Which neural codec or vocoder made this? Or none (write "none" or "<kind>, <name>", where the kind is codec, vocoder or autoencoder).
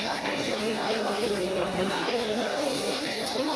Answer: codec, SNAC